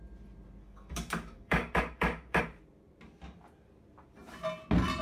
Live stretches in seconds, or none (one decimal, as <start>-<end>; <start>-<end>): 0.0-0.6; 2.4-5.0